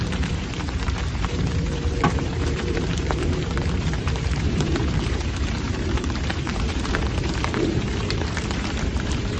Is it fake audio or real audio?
fake